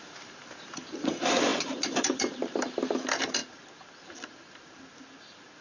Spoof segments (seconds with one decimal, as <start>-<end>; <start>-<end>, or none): 0.0-3.4